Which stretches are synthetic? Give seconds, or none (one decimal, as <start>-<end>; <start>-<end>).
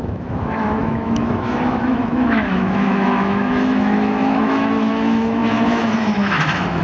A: 0.0-6.8